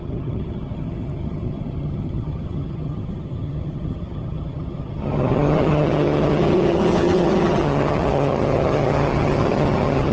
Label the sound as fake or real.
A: fake